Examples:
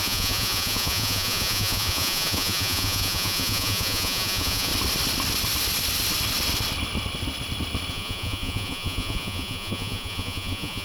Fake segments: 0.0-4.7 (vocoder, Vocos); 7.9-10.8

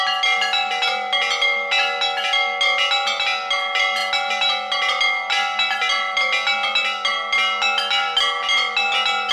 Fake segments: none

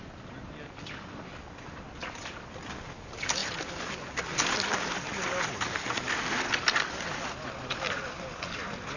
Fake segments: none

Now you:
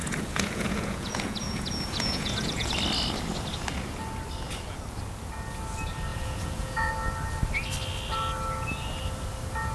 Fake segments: 0.0-2.7 (vocoder, Vocos); 6.1-6.9

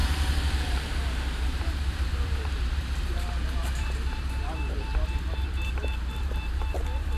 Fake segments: 0.0-4.9 (vocoder, BigVGAN v2); 5.4-7.2

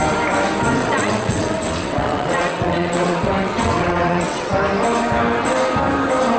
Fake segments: 0.8-4.6 (vocoder, WaveNeXt)

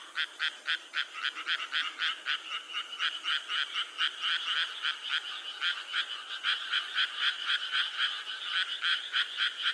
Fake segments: 5.7-8.4 (vocoder, Vocos); 8.9-9.7

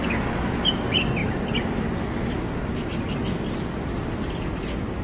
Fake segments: none